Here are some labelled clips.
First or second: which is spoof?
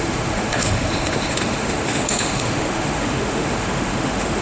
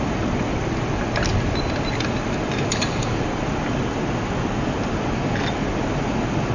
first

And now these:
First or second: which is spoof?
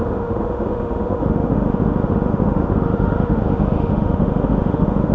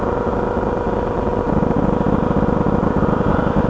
first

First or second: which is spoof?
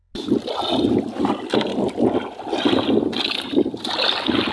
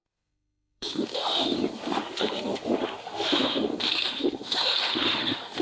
second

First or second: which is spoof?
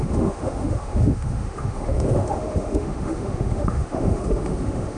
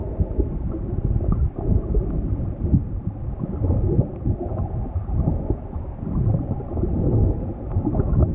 first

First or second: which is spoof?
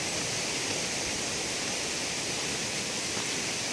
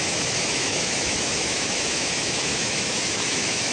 second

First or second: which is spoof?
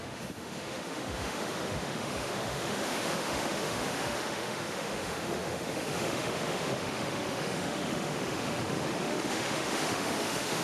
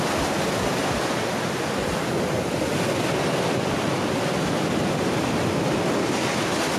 first